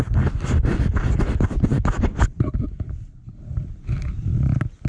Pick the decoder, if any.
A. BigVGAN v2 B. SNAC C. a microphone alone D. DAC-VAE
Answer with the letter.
C